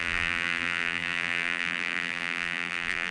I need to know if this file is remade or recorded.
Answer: remade